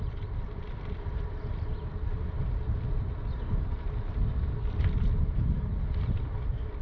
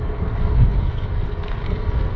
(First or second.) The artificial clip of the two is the second